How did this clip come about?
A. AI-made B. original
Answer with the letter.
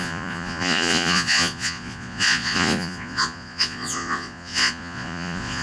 A